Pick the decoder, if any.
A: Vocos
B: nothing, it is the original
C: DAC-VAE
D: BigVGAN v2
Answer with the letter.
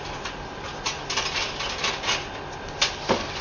B